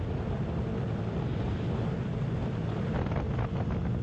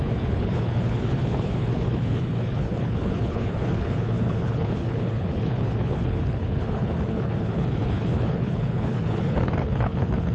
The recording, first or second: first